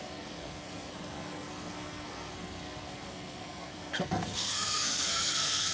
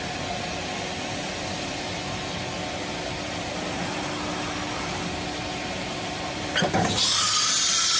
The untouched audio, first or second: second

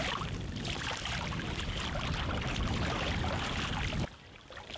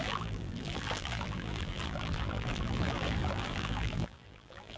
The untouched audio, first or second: first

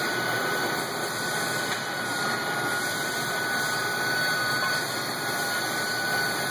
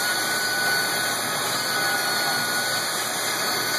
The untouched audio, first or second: second